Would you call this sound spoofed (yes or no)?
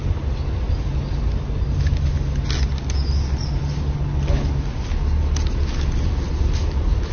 no